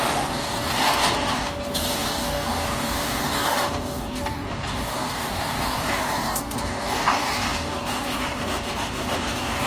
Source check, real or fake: fake